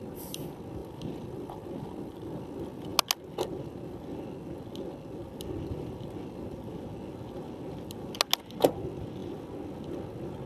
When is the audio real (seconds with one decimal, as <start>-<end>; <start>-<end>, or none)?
0.0-0.8; 2.4-10.5